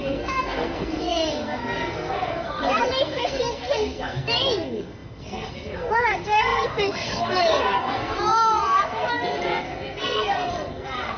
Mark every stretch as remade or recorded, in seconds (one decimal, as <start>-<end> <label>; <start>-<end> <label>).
0.0-11.2 remade